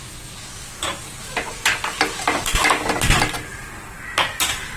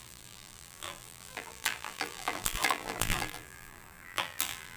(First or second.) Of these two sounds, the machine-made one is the second